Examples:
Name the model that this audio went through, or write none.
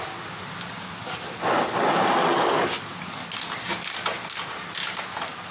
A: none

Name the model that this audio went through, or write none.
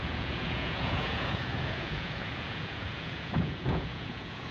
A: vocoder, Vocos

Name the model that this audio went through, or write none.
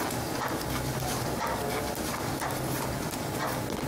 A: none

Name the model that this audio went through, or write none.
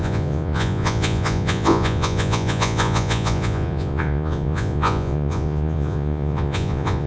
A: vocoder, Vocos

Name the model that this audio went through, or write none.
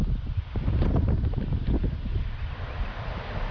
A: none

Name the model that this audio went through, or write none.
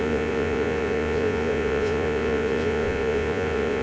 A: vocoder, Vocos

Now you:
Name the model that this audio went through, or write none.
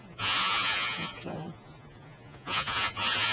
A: vocoder, Vocos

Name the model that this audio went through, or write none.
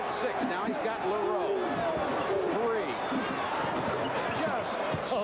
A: none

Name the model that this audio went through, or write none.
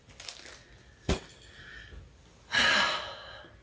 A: none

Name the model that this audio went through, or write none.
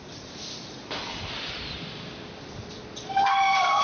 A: none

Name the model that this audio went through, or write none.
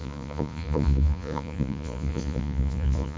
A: vocoder, Vocos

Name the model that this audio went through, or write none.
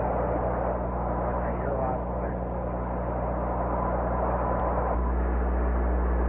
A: none